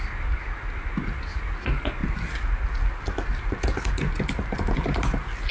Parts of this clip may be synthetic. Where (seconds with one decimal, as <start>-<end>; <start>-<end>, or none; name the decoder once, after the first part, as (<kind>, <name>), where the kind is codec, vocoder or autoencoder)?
none